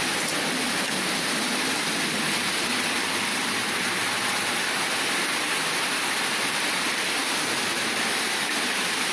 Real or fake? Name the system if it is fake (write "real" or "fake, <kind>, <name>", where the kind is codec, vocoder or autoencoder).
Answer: real